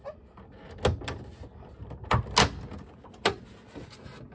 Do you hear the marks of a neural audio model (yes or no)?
no